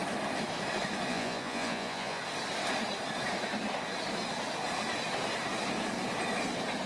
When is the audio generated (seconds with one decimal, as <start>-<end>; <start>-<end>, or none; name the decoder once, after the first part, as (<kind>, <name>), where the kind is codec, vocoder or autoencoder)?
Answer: 1.1-2.2 (vocoder, Vocos)